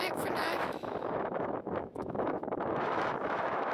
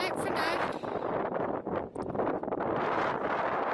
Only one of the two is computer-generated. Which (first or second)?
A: first